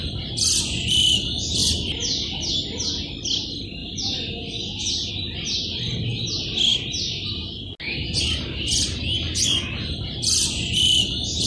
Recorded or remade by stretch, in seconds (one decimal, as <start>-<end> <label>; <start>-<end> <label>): 0.0-3.8 recorded; 3.8-5.1 remade; 5.1-11.5 recorded